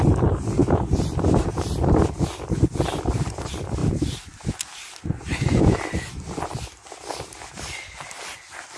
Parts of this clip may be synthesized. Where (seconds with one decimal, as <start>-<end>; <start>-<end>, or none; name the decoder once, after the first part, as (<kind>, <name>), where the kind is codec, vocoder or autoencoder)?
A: none